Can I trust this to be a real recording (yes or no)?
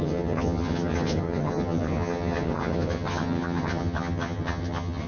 no